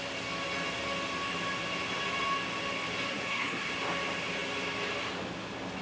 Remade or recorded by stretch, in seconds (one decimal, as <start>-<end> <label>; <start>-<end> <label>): 0.0-3.1 recorded; 3.1-3.7 remade; 3.7-5.8 recorded